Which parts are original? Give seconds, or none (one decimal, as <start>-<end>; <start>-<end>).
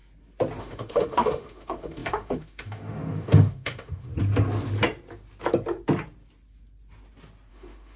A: 0.0-0.6; 4.1-7.5